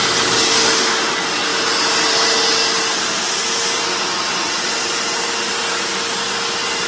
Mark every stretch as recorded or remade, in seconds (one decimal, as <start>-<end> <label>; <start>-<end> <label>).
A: 0.0-6.9 recorded